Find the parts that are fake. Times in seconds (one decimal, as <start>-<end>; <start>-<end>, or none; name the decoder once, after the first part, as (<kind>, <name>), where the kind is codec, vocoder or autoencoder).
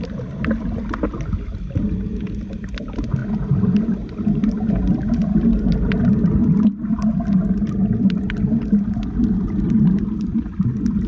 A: none